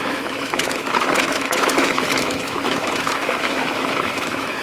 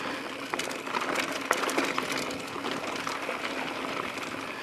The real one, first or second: second